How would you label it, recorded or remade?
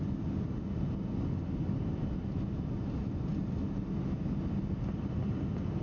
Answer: recorded